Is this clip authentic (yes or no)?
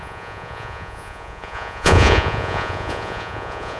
no